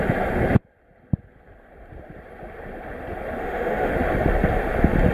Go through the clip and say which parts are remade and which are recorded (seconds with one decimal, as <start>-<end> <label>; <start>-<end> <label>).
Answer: 0.0-3.4 recorded; 3.4-3.9 remade; 3.9-5.1 recorded

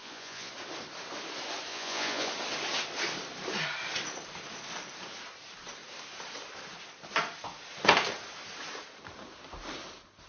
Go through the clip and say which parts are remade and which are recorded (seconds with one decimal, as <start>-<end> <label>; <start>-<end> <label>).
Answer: 0.0-0.5 remade; 0.5-1.7 recorded; 1.7-2.3 remade; 2.3-10.3 recorded

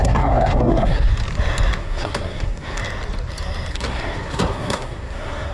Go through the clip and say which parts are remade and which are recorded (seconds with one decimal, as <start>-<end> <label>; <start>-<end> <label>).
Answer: 0.0-1.1 remade; 1.1-1.8 recorded; 1.8-2.8 remade; 2.8-3.7 recorded; 3.7-5.5 remade

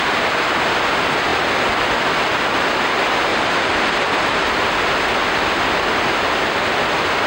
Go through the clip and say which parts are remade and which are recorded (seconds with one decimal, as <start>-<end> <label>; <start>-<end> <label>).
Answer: 0.0-3.3 recorded; 3.3-4.5 remade; 4.5-7.3 recorded

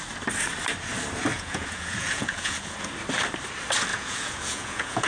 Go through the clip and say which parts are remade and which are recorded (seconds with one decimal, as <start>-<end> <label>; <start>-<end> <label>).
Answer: 0.0-1.3 recorded; 1.3-2.9 remade; 2.9-3.9 recorded; 3.9-5.1 remade